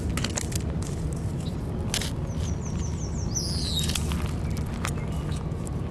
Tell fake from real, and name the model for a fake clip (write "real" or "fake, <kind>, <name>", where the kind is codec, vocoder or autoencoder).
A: real